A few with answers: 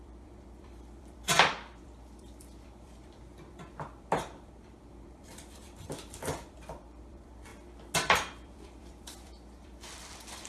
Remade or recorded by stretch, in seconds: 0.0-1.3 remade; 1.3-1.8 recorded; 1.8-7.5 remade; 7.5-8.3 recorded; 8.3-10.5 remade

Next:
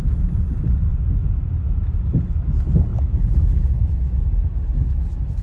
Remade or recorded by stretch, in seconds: 0.0-0.9 recorded; 0.9-1.5 remade; 1.5-5.4 recorded

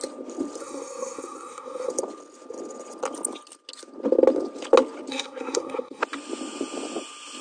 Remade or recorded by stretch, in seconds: 0.0-0.6 recorded; 0.6-1.9 remade; 1.9-5.1 recorded; 5.1-6.0 remade; 6.0-7.4 recorded